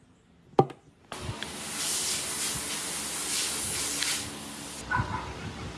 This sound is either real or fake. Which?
real